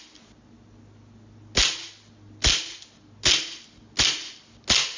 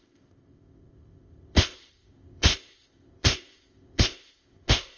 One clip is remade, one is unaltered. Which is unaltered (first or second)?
first